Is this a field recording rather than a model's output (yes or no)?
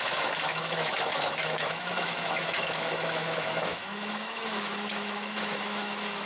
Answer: no